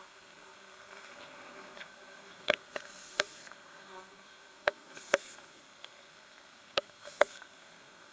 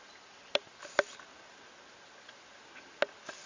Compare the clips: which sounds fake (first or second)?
first